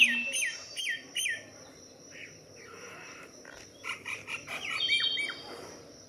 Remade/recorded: remade